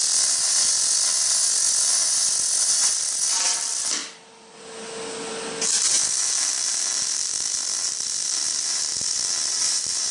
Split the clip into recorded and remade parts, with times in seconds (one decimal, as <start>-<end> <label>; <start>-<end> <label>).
0.0-6.0 recorded; 6.0-8.8 remade; 8.8-10.1 recorded